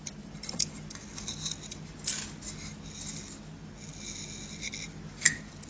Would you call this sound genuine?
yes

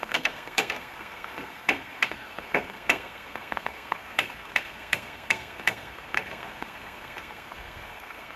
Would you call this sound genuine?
no